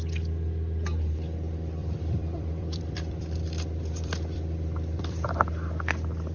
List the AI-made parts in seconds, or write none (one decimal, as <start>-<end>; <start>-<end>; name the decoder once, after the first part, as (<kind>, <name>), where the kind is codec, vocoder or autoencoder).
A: 1.8-5.3 (vocoder, BigVGAN v2)